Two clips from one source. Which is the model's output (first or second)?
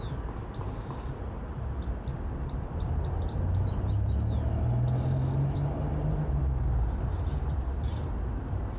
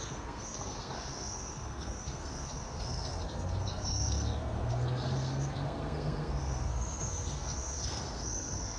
second